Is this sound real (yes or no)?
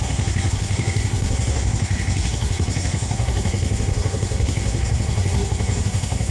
no